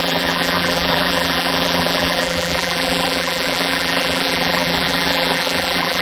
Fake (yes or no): yes